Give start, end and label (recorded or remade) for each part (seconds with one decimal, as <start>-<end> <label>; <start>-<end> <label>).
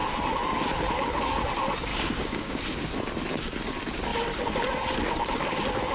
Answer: 0.0-1.9 recorded; 1.9-2.6 remade; 2.6-5.9 recorded